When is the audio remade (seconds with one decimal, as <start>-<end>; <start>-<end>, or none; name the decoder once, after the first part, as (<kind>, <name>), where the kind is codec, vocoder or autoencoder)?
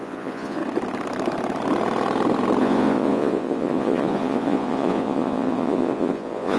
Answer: 0.0-0.6 (vocoder, Vocos); 2.6-6.6